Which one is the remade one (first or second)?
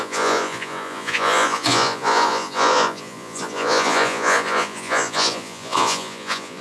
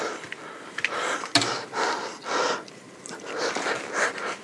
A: first